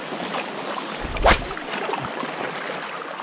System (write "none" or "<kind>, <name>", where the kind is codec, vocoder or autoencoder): none